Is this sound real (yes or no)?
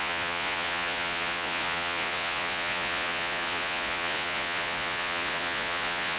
no